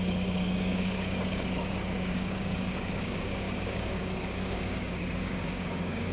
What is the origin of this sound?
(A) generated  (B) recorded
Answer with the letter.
A